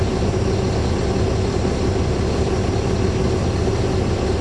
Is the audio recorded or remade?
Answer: recorded